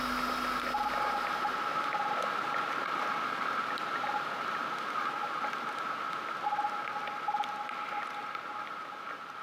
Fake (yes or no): no